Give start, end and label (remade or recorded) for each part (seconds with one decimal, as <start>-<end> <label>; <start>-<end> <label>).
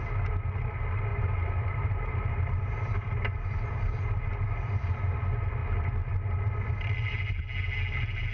0.0-1.1 recorded; 1.1-5.0 remade; 5.0-8.3 recorded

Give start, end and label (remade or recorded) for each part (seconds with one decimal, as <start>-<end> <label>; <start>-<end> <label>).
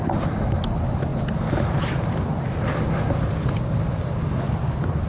0.0-5.1 recorded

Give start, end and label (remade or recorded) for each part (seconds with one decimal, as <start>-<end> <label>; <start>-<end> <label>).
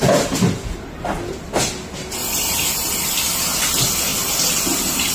0.0-5.1 recorded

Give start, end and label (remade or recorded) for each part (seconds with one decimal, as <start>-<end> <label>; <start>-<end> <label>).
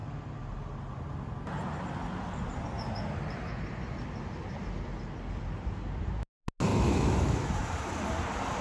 0.0-6.7 recorded; 6.7-7.5 remade; 7.5-8.6 recorded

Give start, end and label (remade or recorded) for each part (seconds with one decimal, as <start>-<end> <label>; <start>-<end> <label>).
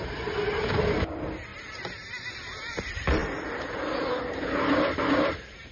0.0-5.7 recorded